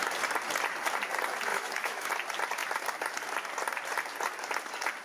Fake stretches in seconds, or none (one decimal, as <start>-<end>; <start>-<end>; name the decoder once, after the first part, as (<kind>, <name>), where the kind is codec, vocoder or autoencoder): 1.5-2.1 (autoencoder, DAC-VAE)